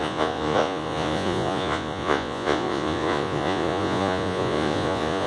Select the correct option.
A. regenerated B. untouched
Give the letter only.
A